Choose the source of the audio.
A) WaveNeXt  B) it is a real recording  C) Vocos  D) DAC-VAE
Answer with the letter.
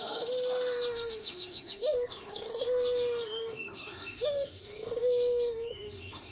D